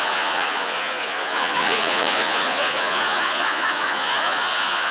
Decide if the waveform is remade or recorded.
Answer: remade